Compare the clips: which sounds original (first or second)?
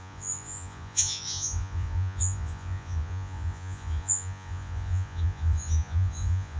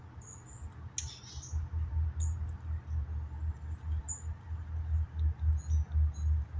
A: second